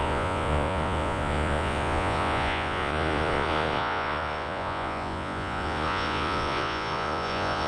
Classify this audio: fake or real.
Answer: fake